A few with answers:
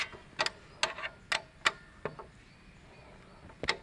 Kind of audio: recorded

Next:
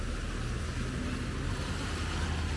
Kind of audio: recorded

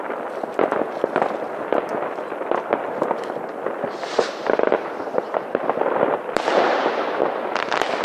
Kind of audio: recorded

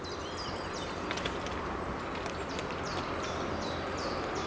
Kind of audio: recorded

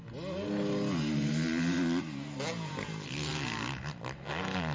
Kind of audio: recorded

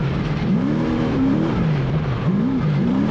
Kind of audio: remade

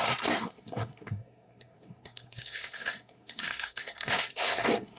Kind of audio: remade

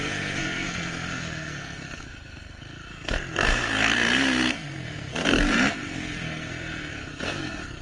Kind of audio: remade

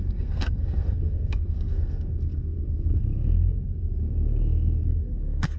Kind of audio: remade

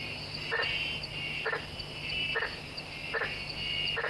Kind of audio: recorded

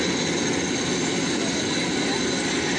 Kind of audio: recorded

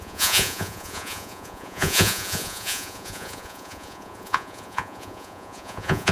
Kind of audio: remade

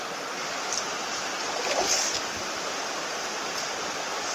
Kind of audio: recorded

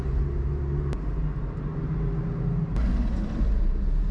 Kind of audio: recorded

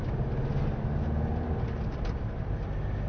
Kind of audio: recorded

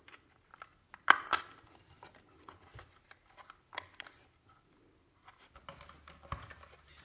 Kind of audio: recorded